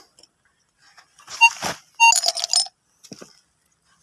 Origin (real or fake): real